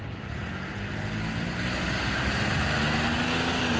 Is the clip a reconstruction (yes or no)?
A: no